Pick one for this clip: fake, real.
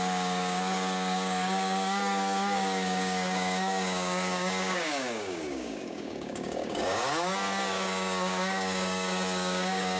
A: fake